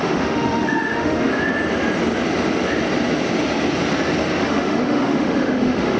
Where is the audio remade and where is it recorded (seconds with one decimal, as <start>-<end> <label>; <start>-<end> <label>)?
0.0-1.3 remade; 1.3-4.4 recorded; 4.4-6.0 remade